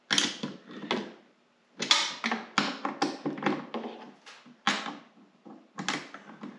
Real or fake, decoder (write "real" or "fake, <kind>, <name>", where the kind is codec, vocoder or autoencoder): real